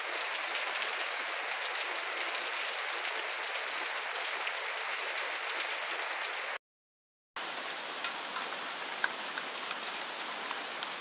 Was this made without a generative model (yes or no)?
yes